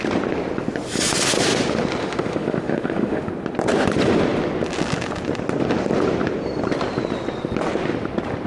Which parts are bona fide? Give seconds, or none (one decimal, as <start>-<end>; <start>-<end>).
0.0-2.0; 3.3-8.5